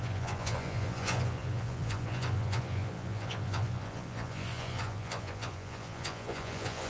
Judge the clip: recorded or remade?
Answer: remade